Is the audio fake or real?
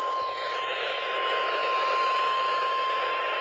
fake